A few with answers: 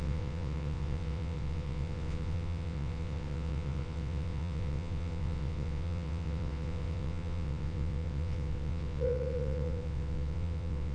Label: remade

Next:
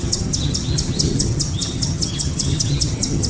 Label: remade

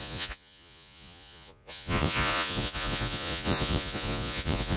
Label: remade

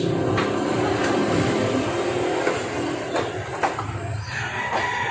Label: recorded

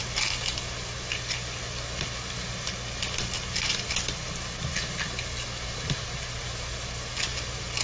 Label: recorded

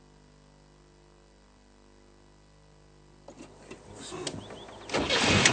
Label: recorded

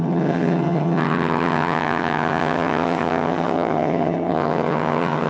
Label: remade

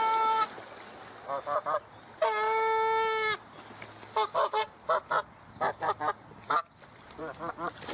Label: recorded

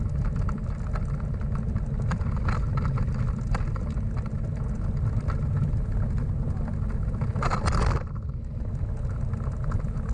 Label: recorded